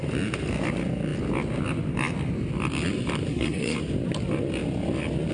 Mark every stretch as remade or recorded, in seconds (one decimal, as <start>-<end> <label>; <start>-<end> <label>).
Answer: 0.0-3.3 recorded; 3.3-3.8 remade; 3.8-5.3 recorded